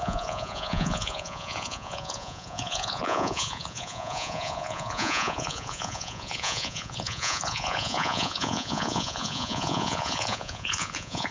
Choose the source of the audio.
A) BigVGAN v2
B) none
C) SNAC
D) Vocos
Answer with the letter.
D